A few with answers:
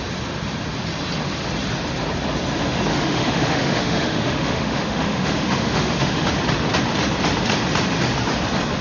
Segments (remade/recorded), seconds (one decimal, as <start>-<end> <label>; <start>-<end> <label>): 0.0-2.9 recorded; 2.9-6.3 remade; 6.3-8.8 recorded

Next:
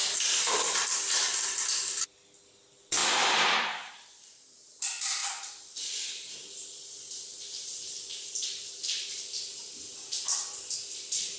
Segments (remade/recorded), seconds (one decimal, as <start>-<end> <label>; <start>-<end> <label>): 0.0-1.7 remade; 1.7-3.0 recorded; 3.0-3.9 remade; 3.9-5.2 recorded; 5.2-6.1 remade; 6.1-6.6 recorded; 6.6-8.6 remade; 8.6-11.4 recorded

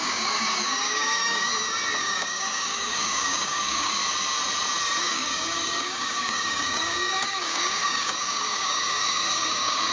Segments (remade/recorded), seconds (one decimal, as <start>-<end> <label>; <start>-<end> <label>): 0.0-1.5 remade; 1.5-2.0 recorded; 2.0-4.0 remade; 4.0-5.0 recorded; 5.0-9.9 remade

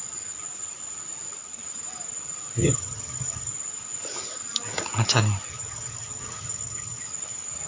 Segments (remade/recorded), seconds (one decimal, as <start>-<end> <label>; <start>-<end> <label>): 0.0-2.6 recorded; 2.6-3.5 remade; 3.5-5.5 recorded; 5.5-7.0 remade; 7.0-7.7 recorded

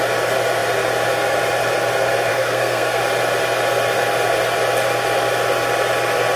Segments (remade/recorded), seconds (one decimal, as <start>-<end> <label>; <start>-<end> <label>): 0.0-2.3 recorded; 2.3-3.0 remade; 3.0-6.4 recorded

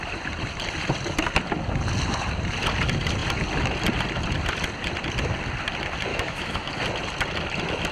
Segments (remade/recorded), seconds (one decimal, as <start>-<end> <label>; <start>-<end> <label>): 0.0-6.1 recorded; 6.1-6.7 remade; 6.7-7.9 recorded